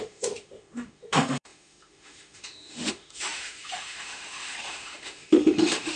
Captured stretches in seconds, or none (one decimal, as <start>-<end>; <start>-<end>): none